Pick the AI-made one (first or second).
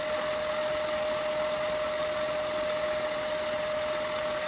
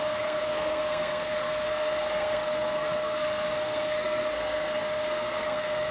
second